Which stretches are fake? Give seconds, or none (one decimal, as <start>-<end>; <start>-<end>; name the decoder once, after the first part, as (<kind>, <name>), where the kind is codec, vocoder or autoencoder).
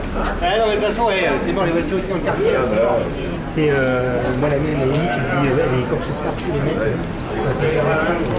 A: none